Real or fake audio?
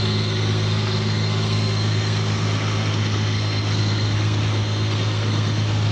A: fake